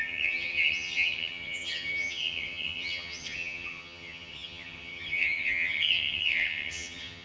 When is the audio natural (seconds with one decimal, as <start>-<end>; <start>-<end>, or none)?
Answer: none

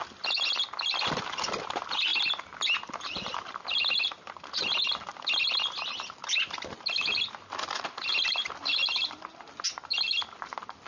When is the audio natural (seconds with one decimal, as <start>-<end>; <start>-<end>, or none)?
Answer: 0.0-10.9

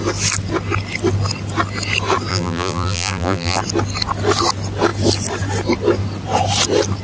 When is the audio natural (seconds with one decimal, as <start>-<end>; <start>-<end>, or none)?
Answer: 0.0-2.3; 3.6-7.0

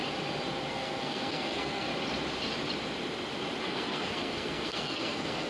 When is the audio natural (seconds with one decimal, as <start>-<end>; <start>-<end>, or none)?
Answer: 0.0-0.7; 1.9-3.6

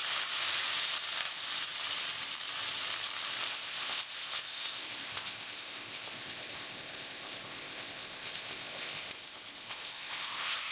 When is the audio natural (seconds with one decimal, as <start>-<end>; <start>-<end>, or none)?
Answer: 0.0-3.5